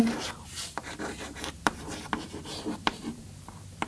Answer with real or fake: fake